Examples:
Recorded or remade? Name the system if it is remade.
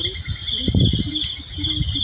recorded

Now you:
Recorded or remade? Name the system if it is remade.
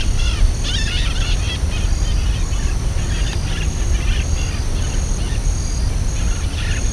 recorded